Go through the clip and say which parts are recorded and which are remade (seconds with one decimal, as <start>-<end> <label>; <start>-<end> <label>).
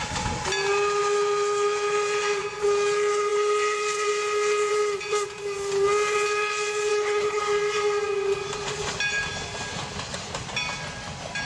0.0-6.9 recorded; 6.9-7.4 remade; 7.4-11.5 recorded